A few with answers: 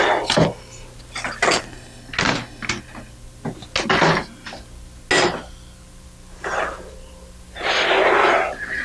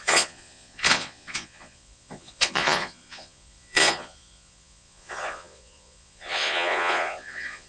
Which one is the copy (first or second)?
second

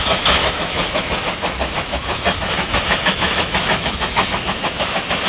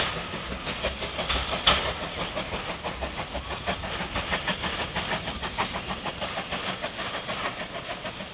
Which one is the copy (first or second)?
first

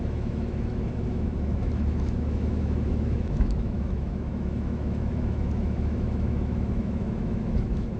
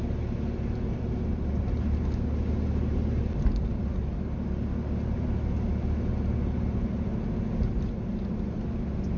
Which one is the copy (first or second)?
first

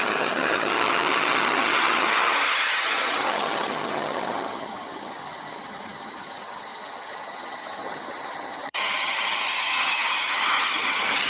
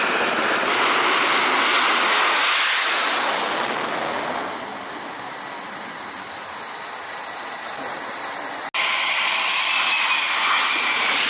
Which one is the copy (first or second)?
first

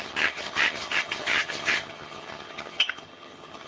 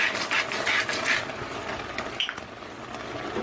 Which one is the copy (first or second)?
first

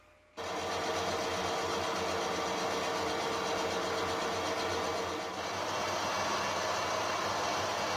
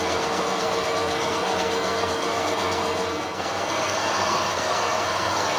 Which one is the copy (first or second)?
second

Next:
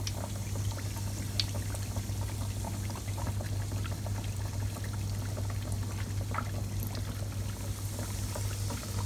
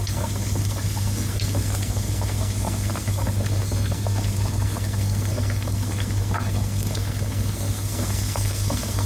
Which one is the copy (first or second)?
second